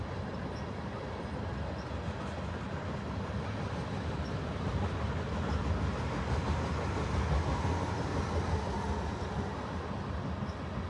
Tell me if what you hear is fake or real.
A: real